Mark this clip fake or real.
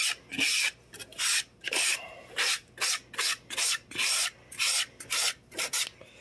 real